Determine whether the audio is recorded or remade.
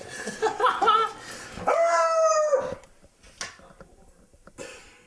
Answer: recorded